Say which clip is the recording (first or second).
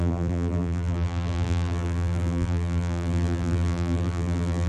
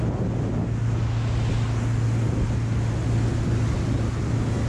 second